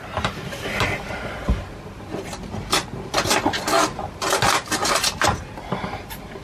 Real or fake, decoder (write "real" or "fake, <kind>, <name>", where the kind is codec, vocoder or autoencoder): real